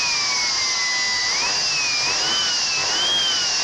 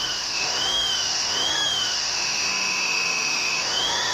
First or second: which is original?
first